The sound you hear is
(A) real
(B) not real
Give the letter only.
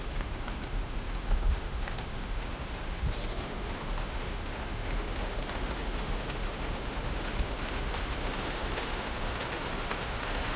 B